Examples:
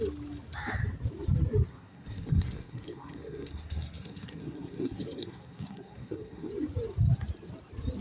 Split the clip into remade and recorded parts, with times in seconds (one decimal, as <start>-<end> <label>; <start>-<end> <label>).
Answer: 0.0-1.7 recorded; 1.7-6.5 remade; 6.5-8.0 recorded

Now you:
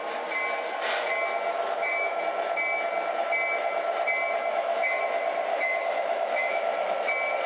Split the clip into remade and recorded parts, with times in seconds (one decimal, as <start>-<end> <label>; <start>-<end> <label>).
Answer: 0.0-1.5 recorded; 1.5-2.2 remade; 2.2-4.5 recorded; 4.5-5.0 remade; 5.0-5.5 recorded; 5.5-7.0 remade; 7.0-7.5 recorded

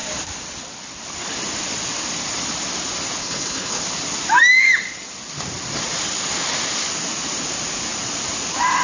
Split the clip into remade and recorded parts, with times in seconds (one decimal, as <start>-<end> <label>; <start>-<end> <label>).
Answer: 0.0-3.2 recorded; 3.2-3.8 remade; 3.8-8.8 recorded